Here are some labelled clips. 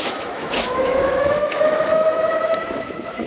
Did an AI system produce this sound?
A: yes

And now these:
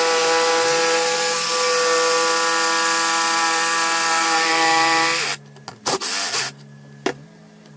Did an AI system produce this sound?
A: no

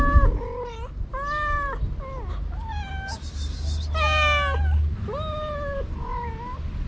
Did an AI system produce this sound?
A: no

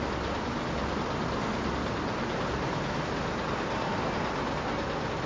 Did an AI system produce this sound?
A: no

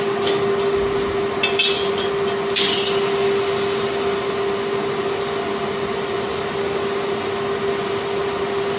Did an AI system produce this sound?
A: no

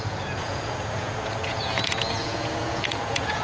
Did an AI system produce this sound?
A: yes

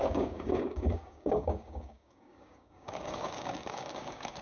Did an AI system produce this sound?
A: yes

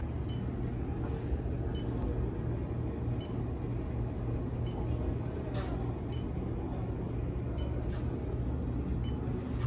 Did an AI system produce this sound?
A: no